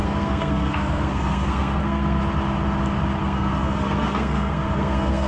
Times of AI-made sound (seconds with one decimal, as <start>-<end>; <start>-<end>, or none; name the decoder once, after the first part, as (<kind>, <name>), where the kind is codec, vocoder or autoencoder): 0.0-2.2 (codec, SNAC); 3.2-5.3